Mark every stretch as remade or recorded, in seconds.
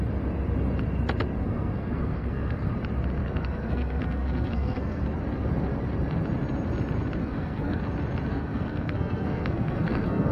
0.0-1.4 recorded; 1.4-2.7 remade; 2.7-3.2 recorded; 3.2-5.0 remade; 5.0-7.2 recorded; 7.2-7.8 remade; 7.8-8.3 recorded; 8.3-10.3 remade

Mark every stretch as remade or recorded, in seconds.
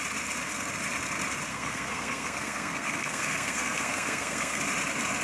0.0-1.5 recorded; 1.5-4.6 remade; 4.6-5.2 recorded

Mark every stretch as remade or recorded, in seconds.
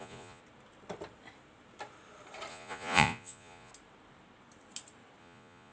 0.0-0.4 remade; 0.4-2.5 recorded; 2.5-3.7 remade; 3.7-5.2 recorded; 5.2-5.7 remade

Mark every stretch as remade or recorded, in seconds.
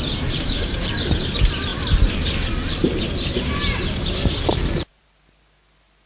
0.0-6.1 remade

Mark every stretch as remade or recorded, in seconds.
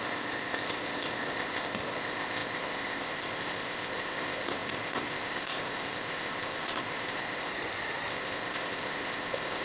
0.0-7.5 remade; 7.5-8.1 recorded; 8.1-9.6 remade